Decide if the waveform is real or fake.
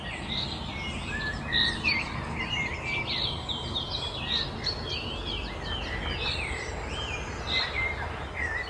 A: real